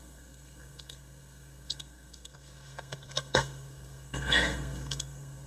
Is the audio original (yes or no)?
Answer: no